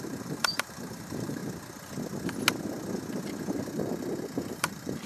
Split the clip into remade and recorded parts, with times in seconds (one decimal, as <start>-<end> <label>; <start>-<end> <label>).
0.0-1.4 remade; 1.4-4.5 recorded; 4.5-5.1 remade